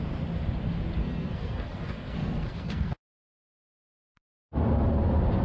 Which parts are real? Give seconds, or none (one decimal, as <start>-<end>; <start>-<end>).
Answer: 0.0-1.0; 4.2-5.4